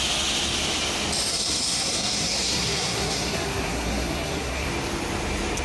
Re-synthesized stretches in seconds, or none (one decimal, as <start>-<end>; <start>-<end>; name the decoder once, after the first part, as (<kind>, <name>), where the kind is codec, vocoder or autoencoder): 1.3-4.7 (codec, SNAC)